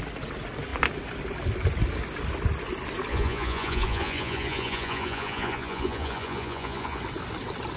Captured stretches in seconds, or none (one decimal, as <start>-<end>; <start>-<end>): 0.0-3.1; 7.0-7.8